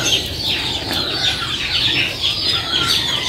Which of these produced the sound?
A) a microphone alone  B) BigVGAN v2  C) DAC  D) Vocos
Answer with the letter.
A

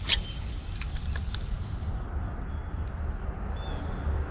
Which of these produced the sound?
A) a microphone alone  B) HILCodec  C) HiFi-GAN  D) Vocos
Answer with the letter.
A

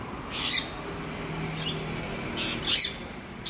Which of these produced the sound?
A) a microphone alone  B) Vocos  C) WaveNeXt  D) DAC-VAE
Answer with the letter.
A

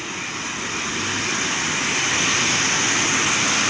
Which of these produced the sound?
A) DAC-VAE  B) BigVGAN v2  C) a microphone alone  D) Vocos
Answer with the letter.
C